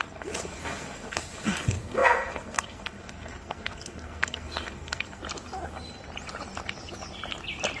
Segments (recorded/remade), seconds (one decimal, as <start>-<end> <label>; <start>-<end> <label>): 0.0-5.2 remade; 5.2-7.8 recorded

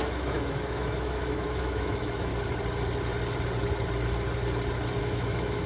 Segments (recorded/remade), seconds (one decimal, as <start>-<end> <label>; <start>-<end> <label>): 0.0-2.3 remade; 2.3-5.0 recorded; 5.0-5.7 remade

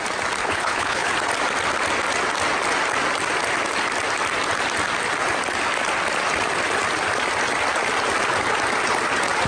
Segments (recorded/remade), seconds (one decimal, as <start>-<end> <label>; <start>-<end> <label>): 0.0-0.4 recorded; 0.4-1.1 remade; 1.1-9.5 recorded

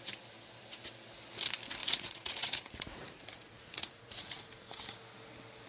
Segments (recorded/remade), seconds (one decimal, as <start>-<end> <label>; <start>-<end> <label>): 0.0-1.8 recorded; 1.8-4.4 remade; 4.4-5.7 recorded

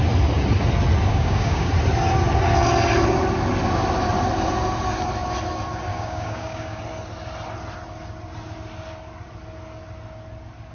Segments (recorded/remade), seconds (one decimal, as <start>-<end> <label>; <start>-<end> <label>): 0.0-1.1 recorded; 1.1-1.7 remade; 1.7-5.9 recorded; 5.9-6.8 remade; 6.8-10.7 recorded